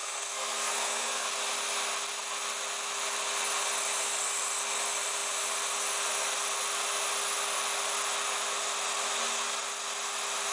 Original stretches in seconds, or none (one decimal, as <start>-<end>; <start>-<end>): 1.3-10.5

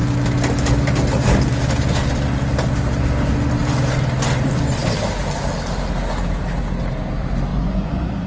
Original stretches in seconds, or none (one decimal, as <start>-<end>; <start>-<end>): 0.0-7.5